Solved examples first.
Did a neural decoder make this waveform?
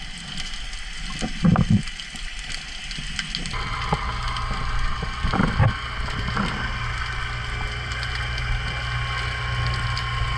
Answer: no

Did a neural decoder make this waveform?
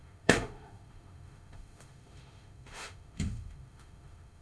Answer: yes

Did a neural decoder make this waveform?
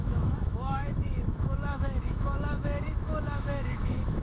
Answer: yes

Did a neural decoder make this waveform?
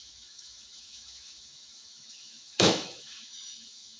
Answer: yes